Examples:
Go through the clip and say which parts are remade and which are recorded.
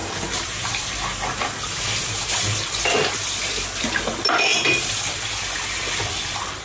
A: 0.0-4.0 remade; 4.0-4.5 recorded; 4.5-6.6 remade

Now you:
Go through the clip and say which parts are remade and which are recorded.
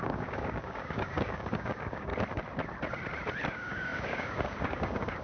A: 0.0-2.1 remade; 2.1-3.5 recorded; 3.5-5.2 remade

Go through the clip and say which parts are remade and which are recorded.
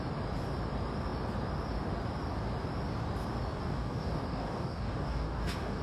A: 0.0-3.6 recorded; 3.6-5.8 remade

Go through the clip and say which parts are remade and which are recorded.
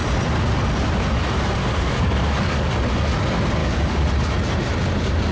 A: 0.0-1.6 recorded; 1.6-2.7 remade; 2.7-3.6 recorded; 3.6-4.1 remade; 4.1-5.3 recorded